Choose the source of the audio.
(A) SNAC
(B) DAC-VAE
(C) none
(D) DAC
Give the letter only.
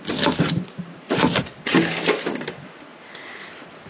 C